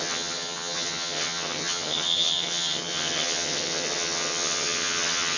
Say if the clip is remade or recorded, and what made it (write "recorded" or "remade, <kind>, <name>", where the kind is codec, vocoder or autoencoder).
remade, vocoder, HiFi-GAN